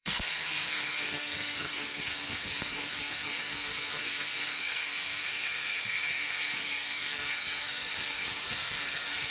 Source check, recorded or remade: remade